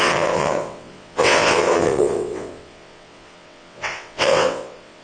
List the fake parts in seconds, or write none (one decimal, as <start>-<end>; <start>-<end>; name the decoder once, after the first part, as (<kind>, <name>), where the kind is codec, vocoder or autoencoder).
0.0-5.0 (vocoder, WaveNeXt)